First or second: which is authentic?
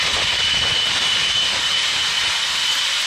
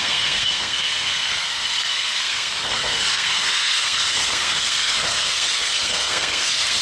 first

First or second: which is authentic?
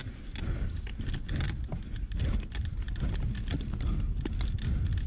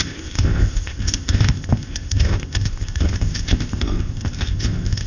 first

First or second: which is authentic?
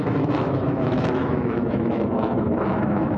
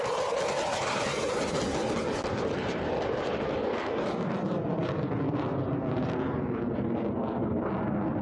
second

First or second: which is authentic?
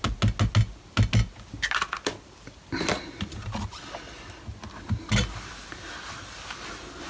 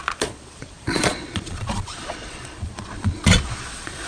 first